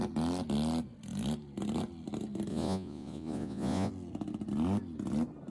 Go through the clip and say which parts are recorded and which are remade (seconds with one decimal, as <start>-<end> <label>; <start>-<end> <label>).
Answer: 0.0-2.5 recorded; 2.5-3.9 remade; 3.9-5.5 recorded